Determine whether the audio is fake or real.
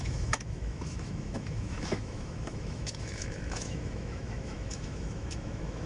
fake